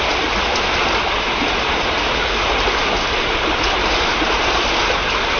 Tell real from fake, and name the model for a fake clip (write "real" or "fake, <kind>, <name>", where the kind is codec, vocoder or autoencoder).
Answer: real